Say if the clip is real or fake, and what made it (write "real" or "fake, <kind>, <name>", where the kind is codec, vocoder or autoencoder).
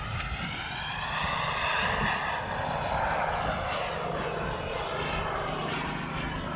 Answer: real